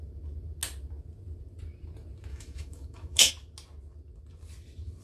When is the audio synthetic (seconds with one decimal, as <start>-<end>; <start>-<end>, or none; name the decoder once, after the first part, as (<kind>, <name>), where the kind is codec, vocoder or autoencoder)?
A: 2.3-3.3 (autoencoder, DAC-VAE)